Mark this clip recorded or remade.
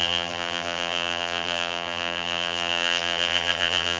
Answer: remade